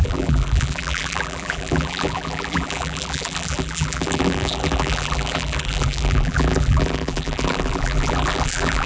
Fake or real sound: fake